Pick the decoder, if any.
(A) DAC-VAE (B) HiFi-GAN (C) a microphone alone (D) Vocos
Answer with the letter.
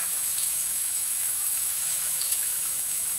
A